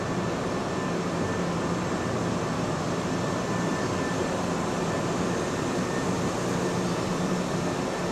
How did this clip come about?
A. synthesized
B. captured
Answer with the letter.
B